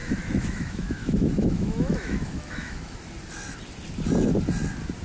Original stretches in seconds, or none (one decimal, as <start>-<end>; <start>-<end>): 3.0-5.0